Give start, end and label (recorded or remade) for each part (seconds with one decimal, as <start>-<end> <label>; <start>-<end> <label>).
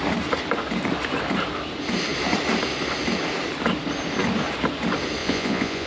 0.0-5.2 recorded; 5.2-5.9 remade